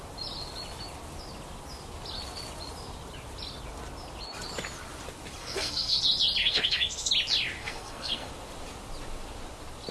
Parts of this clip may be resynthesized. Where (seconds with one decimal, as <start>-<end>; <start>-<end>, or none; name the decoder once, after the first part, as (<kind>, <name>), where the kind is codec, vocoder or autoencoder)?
5.4-6.0 (codec, SNAC); 6.4-7.1; 7.6-8.3